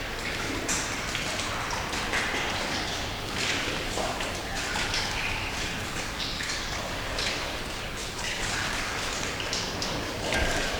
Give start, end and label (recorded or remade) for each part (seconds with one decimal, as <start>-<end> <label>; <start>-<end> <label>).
0.0-0.6 remade; 0.6-2.6 recorded; 2.6-10.8 remade